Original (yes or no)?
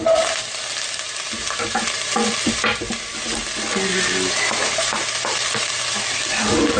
yes